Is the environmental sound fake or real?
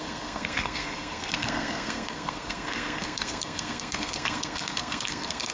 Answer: fake